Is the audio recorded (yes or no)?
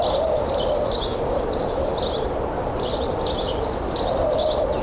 yes